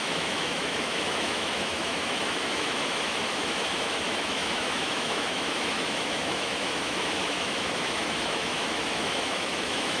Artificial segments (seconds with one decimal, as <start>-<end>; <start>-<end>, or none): 0.0-10.0